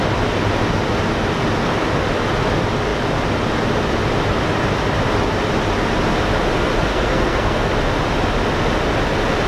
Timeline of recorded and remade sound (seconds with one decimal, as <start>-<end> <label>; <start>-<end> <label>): 0.0-6.9 recorded; 6.9-7.7 remade; 7.7-9.5 recorded